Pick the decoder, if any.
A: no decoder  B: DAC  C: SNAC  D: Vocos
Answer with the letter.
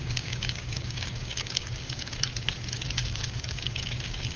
B